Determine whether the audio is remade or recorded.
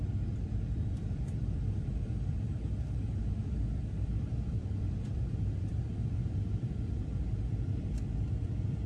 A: remade